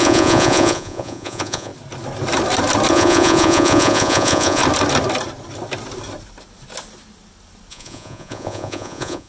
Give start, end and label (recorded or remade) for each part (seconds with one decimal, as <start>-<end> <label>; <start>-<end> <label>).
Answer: 0.0-1.7 remade; 1.7-2.9 recorded; 2.9-4.6 remade; 4.6-7.7 recorded; 7.7-9.3 remade